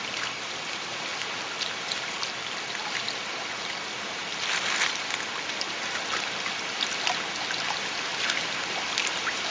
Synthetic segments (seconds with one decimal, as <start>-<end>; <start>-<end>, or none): none